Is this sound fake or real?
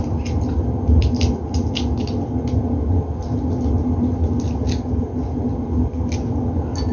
real